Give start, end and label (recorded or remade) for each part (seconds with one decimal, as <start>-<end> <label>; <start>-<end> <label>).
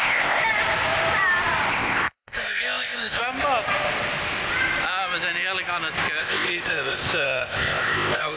0.0-0.4 remade; 0.4-1.7 recorded; 1.7-3.2 remade; 3.2-6.2 recorded; 6.2-8.4 remade